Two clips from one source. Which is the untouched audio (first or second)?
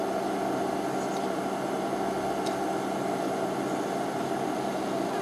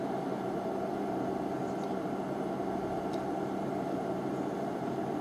first